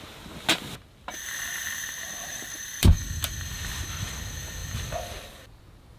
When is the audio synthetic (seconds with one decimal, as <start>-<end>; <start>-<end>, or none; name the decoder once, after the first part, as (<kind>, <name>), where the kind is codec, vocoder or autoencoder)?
2.3-3.0 (vocoder, BigVGAN v2); 4.6-5.6